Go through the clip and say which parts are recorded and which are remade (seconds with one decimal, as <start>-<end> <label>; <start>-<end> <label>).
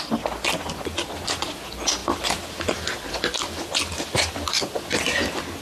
0.0-5.6 recorded